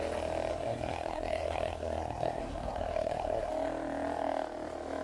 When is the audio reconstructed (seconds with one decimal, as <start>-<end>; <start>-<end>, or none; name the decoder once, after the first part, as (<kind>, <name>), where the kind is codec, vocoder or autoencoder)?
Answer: 0.5-3.5 (codec, SNAC)